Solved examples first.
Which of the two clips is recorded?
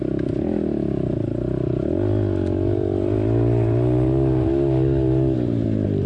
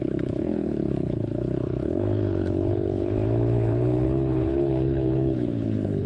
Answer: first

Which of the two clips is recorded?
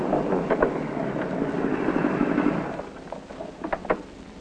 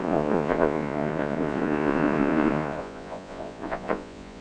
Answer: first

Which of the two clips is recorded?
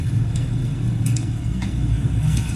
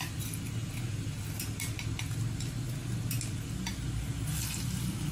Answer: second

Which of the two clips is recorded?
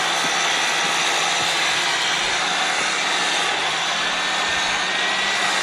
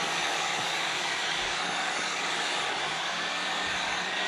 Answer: first